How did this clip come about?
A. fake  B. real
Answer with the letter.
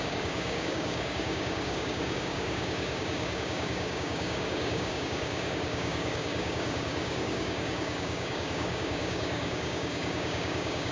A